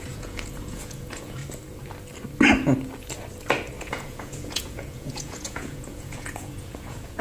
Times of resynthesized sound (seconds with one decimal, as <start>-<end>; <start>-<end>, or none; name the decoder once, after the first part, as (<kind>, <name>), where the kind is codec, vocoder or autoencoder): 0.0-1.4 (vocoder, Vocos); 3.8-7.2